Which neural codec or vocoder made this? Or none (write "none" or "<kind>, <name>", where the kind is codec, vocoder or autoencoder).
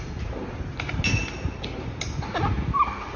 none